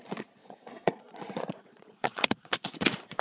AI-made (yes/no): yes